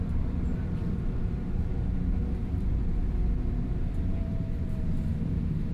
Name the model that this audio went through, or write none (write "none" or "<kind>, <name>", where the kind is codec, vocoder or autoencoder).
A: vocoder, BigVGAN v2